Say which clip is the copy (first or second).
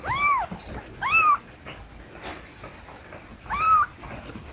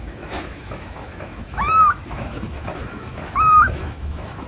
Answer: second